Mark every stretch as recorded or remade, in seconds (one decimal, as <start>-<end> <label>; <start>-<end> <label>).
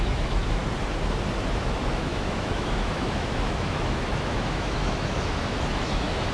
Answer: 0.0-0.6 remade; 0.6-1.5 recorded; 1.5-6.3 remade